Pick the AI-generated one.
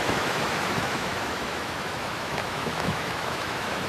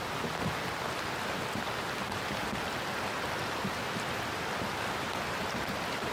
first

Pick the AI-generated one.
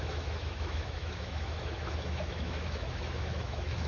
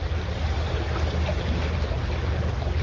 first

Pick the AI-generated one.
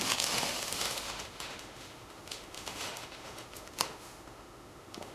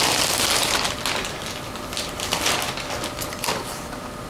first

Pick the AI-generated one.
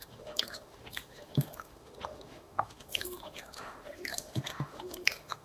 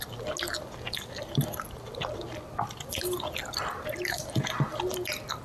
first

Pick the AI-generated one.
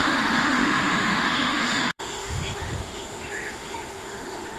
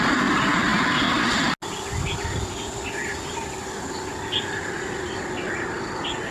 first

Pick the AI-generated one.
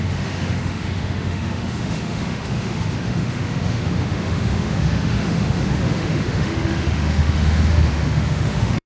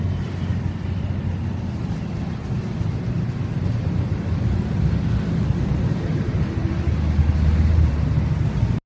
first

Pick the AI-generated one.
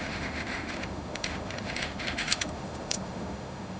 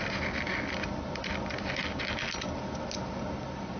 first